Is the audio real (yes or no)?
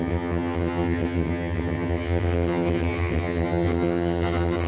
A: no